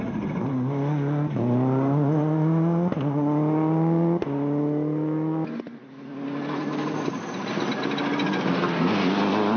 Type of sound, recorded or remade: recorded